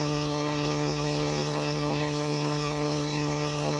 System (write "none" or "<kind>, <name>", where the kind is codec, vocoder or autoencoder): codec, SNAC